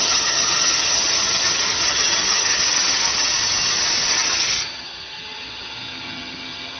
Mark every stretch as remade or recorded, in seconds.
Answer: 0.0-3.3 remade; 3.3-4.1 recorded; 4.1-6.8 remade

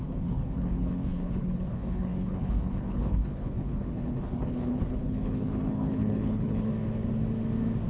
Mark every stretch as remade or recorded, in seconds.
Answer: 0.0-6.7 remade; 6.7-7.9 recorded

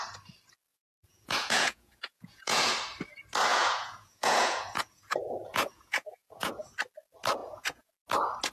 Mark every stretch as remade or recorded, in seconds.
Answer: 0.0-0.7 recorded; 0.7-2.7 remade; 2.7-3.5 recorded; 3.5-6.7 remade; 6.7-7.4 recorded; 7.4-7.9 remade; 7.9-8.5 recorded

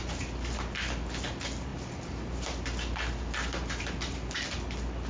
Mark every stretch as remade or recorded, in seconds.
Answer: 0.0-5.1 recorded

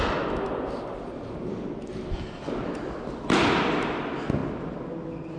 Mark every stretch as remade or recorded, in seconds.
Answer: 0.0-5.4 recorded

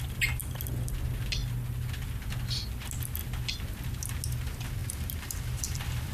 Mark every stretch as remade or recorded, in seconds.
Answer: 0.0-4.8 recorded; 4.8-6.1 remade

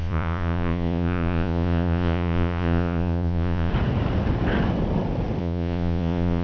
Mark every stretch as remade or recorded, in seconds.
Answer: 0.0-3.7 remade; 3.7-5.4 recorded; 5.4-6.4 remade

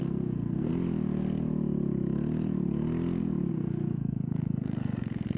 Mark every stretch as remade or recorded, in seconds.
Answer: 0.0-0.7 remade; 0.7-3.5 recorded; 3.5-5.4 remade